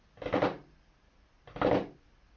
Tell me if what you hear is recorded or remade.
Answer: recorded